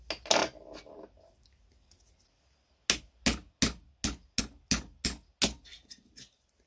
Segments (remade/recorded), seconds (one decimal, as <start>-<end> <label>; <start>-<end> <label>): 0.0-6.7 recorded